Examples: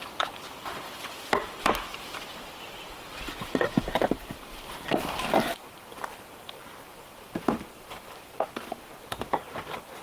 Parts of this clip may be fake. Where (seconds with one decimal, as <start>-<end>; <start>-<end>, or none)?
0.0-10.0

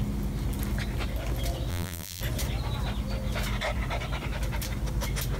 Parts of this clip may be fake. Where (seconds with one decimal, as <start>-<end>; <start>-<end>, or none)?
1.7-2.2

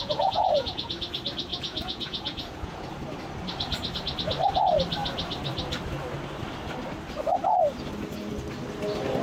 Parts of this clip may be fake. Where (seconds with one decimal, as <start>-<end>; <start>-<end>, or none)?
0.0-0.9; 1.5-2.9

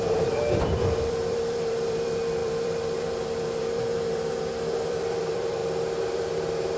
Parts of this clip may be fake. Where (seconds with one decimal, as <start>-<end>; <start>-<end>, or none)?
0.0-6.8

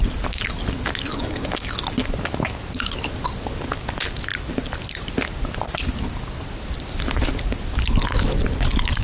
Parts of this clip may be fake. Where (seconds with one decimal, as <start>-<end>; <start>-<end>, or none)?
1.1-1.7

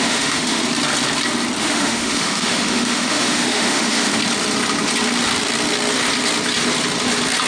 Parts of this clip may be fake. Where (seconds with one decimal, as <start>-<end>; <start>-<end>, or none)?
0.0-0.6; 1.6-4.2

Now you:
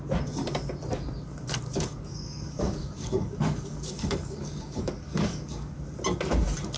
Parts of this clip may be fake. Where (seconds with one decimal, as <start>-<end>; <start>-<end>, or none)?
1.7-5.8

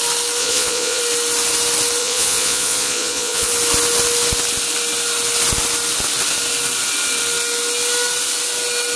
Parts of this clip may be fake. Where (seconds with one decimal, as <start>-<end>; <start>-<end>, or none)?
0.4-1.0; 2.0-3.5